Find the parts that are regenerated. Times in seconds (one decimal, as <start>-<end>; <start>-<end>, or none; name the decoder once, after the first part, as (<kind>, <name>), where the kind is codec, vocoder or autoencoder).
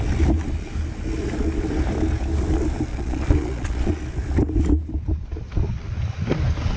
2.9-4.0 (vocoder, Vocos)